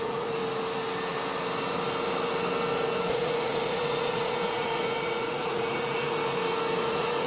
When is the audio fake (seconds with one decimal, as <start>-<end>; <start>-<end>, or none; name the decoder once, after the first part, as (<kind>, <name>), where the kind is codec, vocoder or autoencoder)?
0.0-0.4 (vocoder, Vocos); 3.1-6.2; 6.8-7.3